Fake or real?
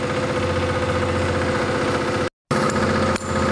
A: real